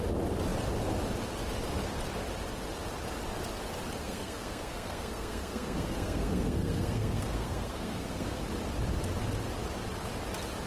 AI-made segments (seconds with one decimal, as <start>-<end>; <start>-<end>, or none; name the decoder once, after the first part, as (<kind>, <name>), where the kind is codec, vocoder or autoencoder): 4.0-8.4 (codec, SNAC)